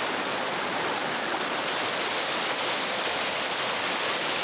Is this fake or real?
real